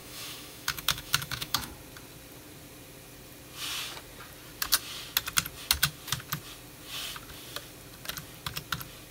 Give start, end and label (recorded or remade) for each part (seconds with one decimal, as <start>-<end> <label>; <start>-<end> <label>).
0.0-1.7 remade; 1.7-9.1 recorded